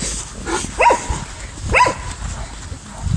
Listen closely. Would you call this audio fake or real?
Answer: real